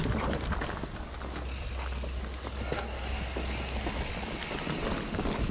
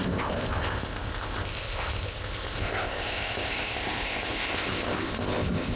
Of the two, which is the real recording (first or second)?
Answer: first